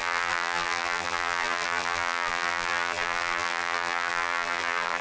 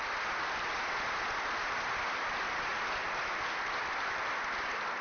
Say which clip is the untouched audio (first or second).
second